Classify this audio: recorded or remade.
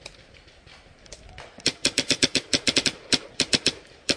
remade